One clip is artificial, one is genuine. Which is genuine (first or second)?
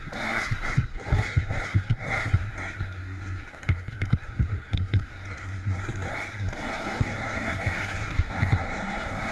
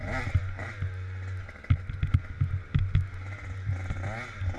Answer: second